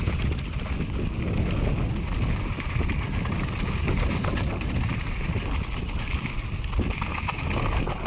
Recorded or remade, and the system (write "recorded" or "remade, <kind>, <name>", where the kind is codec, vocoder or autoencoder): recorded